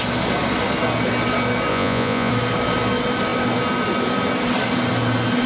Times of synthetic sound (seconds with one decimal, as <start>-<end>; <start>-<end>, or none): 1.7-2.3

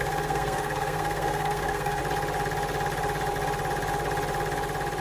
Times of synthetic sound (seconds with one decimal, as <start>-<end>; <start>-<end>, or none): 0.0-2.0

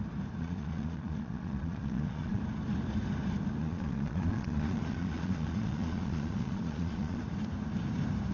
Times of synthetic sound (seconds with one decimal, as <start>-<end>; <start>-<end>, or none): 0.4-2.4; 3.6-7.2